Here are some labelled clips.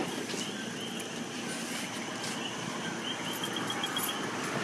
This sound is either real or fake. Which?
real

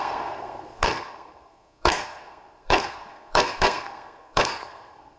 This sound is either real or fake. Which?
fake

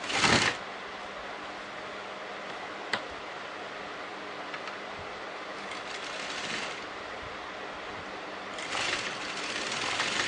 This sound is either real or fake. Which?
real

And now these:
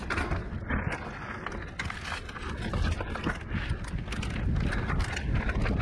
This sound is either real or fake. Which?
real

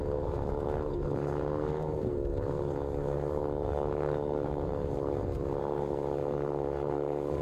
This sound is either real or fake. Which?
fake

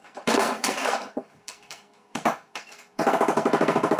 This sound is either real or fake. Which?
fake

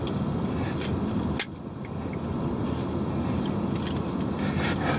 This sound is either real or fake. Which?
real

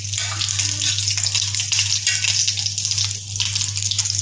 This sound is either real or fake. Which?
real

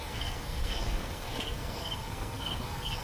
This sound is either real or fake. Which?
fake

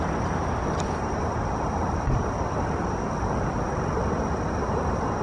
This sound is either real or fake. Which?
real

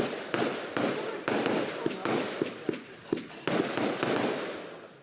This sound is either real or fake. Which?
real